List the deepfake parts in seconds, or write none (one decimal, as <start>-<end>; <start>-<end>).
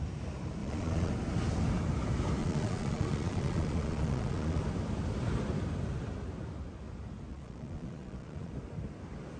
0.6-1.1; 2.4-4.6; 7.3-8.5